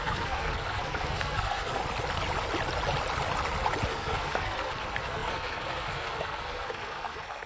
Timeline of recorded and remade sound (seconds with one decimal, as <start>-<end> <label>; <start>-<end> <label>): 0.0-1.8 remade; 1.8-3.9 recorded; 3.9-7.5 remade